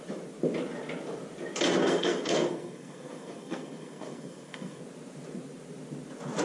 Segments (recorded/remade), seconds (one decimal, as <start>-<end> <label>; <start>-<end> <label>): 0.0-1.8 recorded; 1.8-4.8 remade; 4.8-6.4 recorded